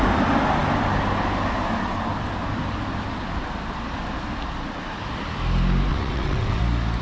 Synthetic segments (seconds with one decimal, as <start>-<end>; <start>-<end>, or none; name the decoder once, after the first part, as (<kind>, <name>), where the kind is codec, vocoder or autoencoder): 5.9-6.6 (vocoder, WaveNeXt)